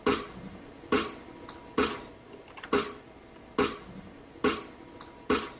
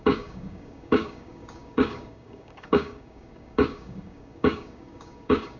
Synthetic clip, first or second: second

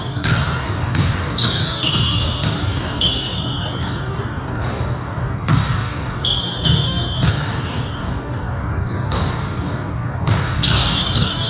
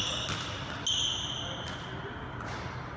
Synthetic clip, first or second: first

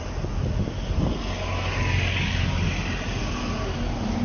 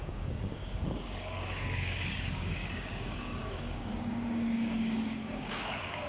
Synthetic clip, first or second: second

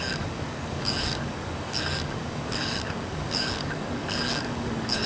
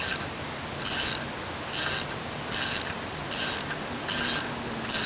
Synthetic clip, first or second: first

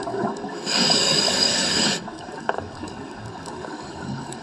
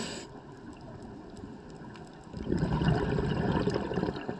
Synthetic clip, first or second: first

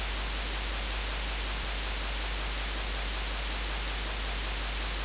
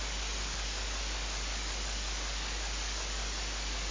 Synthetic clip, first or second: second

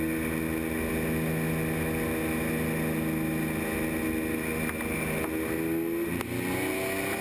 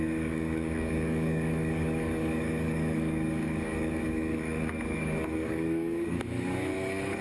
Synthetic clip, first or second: second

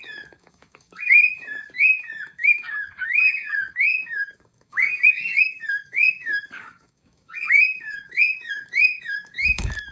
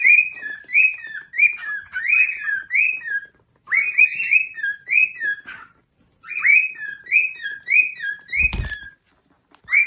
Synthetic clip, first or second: first